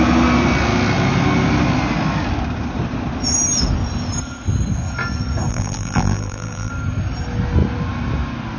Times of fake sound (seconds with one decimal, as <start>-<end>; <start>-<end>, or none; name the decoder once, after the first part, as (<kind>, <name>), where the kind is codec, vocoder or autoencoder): 5.5-6.7 (vocoder, BigVGAN v2)